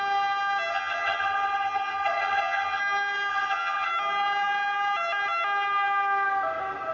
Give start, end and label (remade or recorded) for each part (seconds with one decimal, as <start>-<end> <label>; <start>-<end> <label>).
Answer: 0.0-0.7 recorded; 0.7-2.8 remade; 2.8-3.3 recorded; 3.3-3.9 remade; 3.9-6.9 recorded